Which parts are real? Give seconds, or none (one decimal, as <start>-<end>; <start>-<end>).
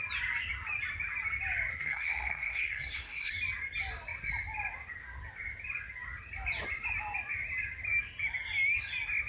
0.0-1.7; 3.3-9.3